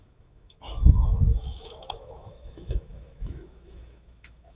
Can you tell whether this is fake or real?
fake